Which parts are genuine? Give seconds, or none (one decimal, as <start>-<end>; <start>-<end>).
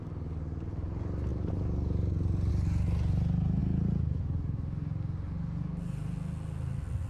0.0-7.1